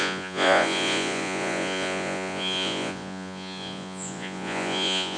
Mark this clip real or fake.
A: fake